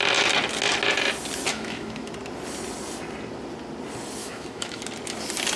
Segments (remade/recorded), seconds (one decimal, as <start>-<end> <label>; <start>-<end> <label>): 0.0-1.5 recorded; 1.5-2.1 remade; 2.1-4.2 recorded; 4.2-4.8 remade; 4.8-5.6 recorded